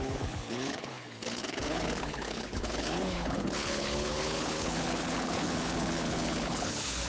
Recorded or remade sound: remade